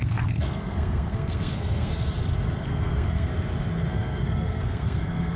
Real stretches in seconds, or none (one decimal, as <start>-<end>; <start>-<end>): 1.9-2.6; 3.3-3.9